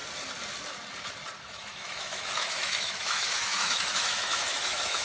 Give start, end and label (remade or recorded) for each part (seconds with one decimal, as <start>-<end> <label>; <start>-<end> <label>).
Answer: 0.0-1.4 recorded; 1.4-5.0 remade